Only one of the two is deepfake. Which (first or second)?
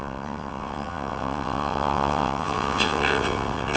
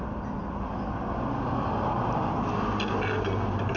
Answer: first